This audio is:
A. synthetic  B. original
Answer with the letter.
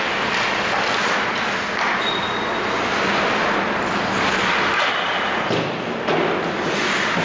B